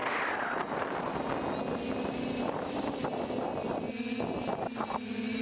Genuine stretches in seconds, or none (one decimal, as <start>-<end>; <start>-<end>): 0.0-5.4